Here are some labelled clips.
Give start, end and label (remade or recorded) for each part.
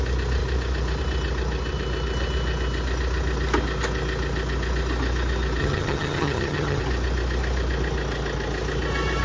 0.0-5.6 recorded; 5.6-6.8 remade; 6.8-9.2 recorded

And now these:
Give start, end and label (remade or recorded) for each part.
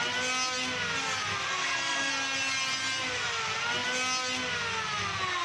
0.0-1.6 recorded; 1.6-2.1 remade; 2.1-5.4 recorded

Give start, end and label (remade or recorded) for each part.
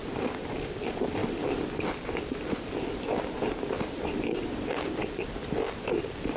0.0-1.2 remade; 1.2-4.7 recorded; 4.7-5.4 remade; 5.4-6.4 recorded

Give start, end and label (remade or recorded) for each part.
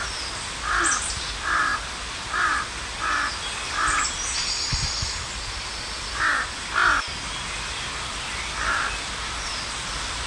0.0-10.3 recorded